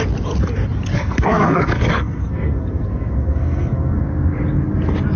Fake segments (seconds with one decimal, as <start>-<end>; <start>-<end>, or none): 0.9-4.0